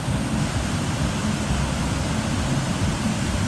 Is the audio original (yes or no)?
yes